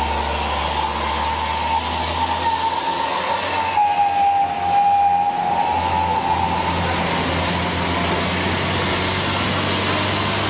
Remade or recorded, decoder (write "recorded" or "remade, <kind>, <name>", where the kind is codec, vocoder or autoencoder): recorded